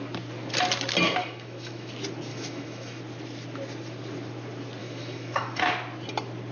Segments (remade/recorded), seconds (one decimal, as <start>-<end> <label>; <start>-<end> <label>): 0.0-1.2 recorded; 1.2-1.9 remade; 1.9-2.3 recorded; 2.3-3.0 remade; 3.0-4.8 recorded; 4.8-5.6 remade; 5.6-6.5 recorded